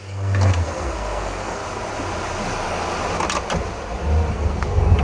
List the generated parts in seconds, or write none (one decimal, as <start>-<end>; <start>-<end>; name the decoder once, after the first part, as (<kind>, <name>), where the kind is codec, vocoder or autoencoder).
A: 0.0-1.6 (codec, SNAC); 4.3-5.0